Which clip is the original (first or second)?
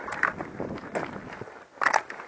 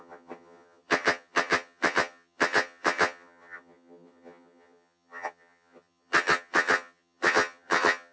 first